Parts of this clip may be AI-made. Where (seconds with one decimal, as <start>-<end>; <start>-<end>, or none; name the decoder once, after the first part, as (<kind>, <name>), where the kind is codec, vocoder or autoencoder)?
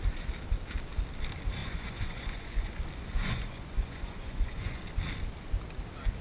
1.6-2.7 (vocoder, Vocos); 3.1-4.8